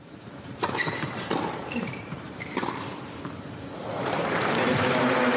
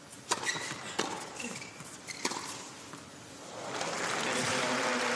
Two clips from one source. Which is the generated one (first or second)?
first